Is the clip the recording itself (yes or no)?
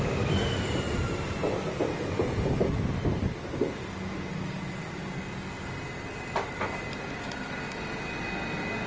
yes